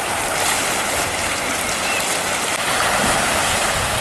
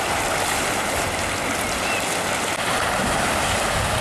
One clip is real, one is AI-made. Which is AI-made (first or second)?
first